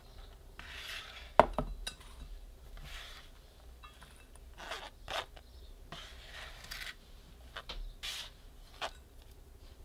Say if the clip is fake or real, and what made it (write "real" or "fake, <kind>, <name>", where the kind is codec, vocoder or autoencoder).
real